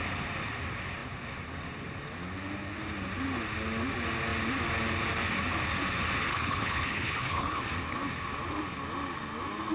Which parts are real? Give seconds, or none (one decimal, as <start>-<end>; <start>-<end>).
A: 0.0-6.3; 7.6-9.7